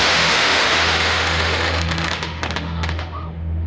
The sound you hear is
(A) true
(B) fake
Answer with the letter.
B